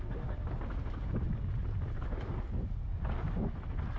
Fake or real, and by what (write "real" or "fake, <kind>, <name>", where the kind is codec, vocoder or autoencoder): real